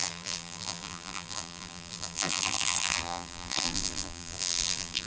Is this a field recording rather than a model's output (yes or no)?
no